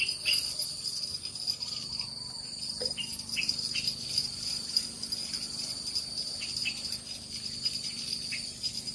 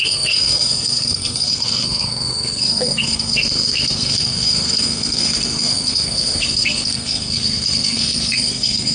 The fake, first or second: second